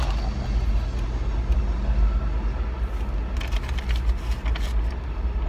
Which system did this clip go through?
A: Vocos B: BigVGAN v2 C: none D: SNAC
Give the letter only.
C